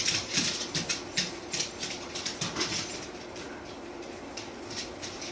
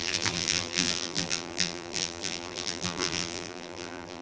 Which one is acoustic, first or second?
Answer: first